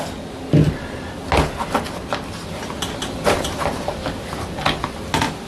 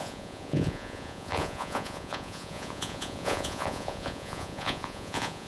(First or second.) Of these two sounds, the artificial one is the second